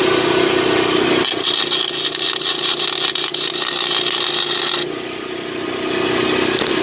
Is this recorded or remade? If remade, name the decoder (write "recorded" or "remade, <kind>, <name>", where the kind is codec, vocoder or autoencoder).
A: recorded